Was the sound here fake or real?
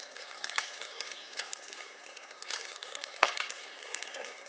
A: fake